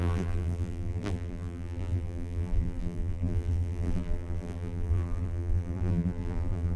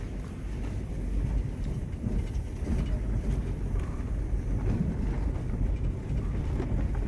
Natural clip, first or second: second